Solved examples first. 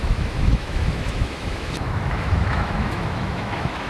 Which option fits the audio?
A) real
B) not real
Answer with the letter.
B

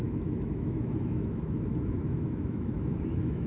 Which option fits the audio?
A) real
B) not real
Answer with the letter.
B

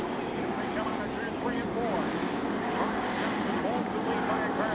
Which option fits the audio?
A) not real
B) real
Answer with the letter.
B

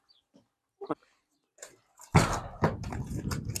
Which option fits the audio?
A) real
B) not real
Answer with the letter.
A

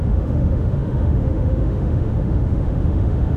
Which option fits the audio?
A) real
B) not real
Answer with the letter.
B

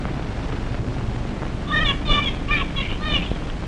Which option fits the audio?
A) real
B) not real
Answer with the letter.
A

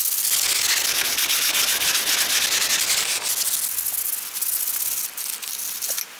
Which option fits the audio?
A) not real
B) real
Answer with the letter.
B